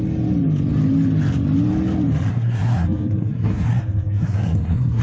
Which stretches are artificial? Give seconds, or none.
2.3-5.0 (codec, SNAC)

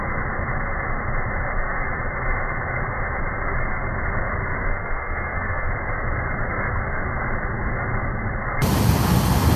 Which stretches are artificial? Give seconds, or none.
4.7-5.7 (codec, SNAC)

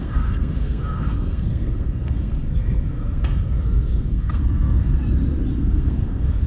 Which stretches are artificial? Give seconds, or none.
0.0-5.0 (codec, SNAC); 5.5-6.5

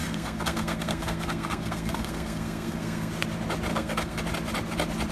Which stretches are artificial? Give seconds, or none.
0.0-3.1 (codec, SNAC); 3.7-4.2